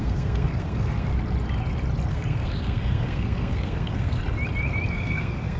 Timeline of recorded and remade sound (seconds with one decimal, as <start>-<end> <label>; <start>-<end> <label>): 0.0-1.1 remade; 1.1-2.1 recorded; 2.1-4.2 remade; 4.2-4.9 recorded; 4.9-5.6 remade